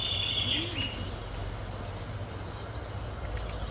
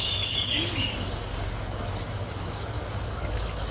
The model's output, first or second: second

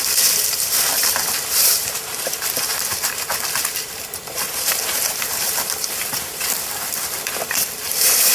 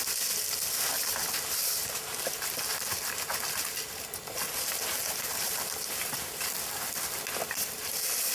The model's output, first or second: first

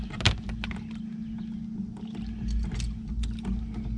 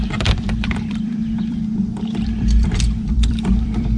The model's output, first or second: second